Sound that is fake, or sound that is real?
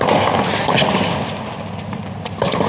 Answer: real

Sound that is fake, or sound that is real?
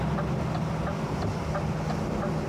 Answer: real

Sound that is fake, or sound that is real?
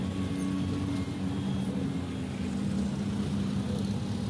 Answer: real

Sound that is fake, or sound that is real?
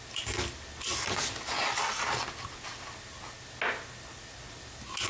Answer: real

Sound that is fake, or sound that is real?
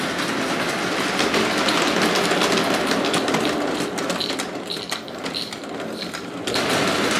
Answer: real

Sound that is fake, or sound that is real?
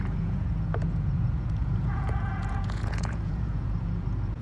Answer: fake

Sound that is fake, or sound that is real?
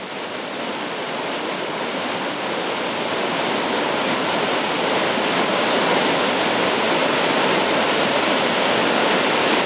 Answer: real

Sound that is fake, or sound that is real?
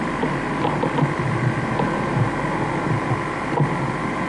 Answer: real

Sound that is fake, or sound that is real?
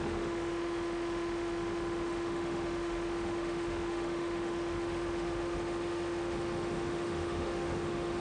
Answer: fake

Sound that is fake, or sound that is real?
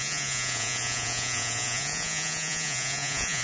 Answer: fake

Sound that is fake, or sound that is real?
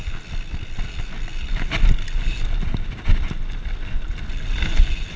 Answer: real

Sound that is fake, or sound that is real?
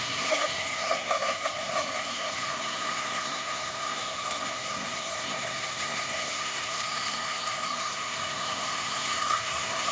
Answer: fake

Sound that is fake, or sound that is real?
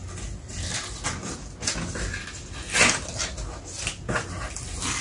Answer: real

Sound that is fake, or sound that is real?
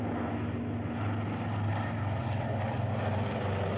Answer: real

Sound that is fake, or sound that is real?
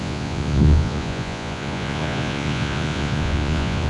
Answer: fake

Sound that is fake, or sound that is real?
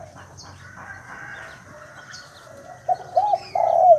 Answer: real